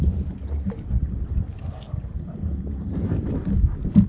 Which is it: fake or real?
real